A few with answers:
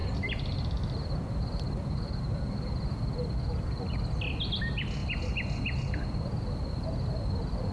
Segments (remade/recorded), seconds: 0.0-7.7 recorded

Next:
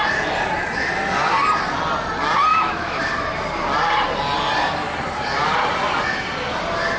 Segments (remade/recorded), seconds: 0.0-2.5 recorded; 2.5-3.0 remade; 3.0-7.0 recorded

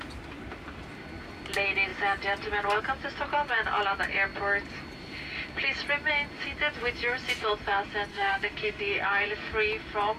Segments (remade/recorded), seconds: 0.0-8.1 recorded; 8.1-8.8 remade; 8.8-10.2 recorded

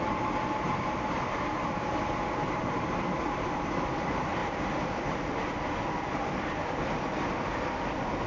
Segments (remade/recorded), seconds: 0.0-8.3 recorded

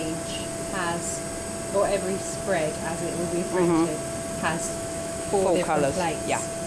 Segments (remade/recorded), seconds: 0.0-4.7 recorded; 4.7-6.1 remade; 6.1-6.7 recorded

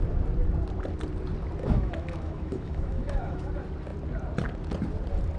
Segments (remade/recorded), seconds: 0.0-1.6 recorded; 1.6-3.5 remade; 3.5-5.4 recorded

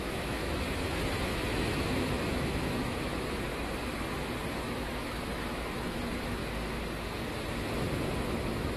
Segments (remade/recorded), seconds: 0.0-3.5 remade; 3.5-4.5 recorded; 4.5-6.4 remade; 6.4-8.2 recorded; 8.2-8.8 remade